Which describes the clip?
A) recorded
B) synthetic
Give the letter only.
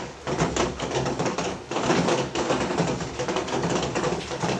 B